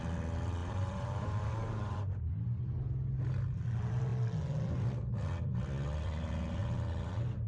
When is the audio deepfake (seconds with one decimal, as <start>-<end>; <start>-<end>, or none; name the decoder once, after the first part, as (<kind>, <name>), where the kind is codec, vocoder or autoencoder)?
0.6-2.0 (vocoder, BigVGAN v2)